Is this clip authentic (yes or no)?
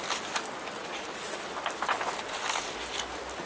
yes